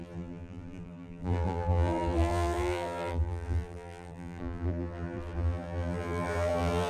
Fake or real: fake